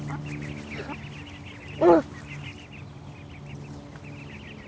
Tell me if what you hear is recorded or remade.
recorded